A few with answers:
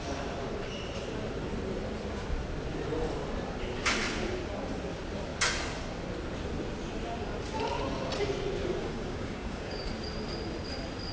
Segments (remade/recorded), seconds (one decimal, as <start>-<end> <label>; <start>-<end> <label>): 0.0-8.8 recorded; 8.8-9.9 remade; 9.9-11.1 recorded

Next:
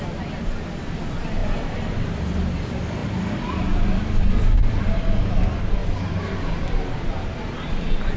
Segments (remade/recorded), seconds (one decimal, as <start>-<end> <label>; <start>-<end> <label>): 0.0-8.2 recorded

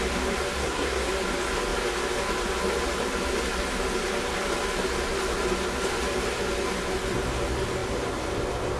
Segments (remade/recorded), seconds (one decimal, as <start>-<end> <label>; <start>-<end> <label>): 0.0-0.6 recorded; 0.6-1.1 remade; 1.1-8.8 recorded